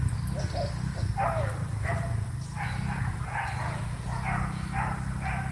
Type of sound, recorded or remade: recorded